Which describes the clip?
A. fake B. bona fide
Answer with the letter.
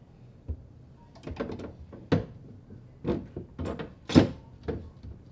B